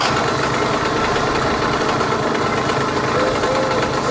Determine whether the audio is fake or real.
real